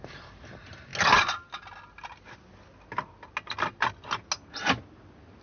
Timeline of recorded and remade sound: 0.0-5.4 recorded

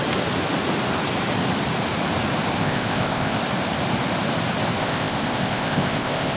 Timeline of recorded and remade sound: 0.0-2.6 recorded; 2.6-3.4 remade; 3.4-4.8 recorded; 4.8-6.4 remade